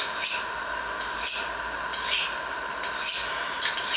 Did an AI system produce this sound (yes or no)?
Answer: no